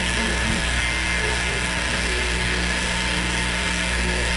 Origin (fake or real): fake